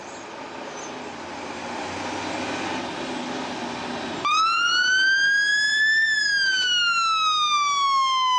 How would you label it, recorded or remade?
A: recorded